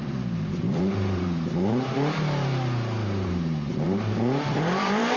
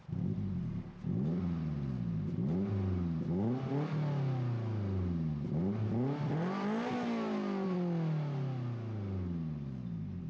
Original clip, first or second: second